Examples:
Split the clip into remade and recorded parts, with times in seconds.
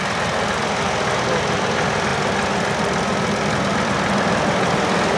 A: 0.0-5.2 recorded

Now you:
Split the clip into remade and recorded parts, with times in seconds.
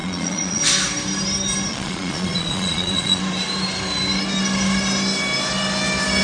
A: 0.0-0.6 remade; 0.6-1.7 recorded; 1.7-3.2 remade; 3.2-6.2 recorded